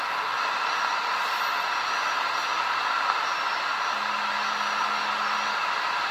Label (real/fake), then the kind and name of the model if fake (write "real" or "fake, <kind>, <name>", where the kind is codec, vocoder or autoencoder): real